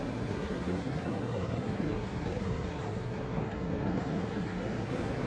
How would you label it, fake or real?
fake